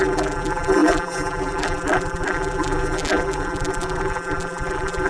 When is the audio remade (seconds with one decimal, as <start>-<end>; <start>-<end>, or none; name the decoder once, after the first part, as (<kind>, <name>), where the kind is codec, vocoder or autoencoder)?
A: 0.0-5.1 (vocoder, BigVGAN v2)